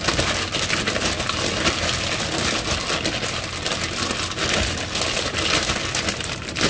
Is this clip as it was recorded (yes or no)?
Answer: yes